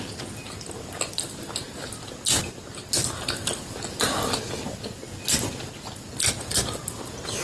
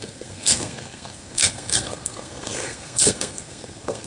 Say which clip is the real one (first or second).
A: first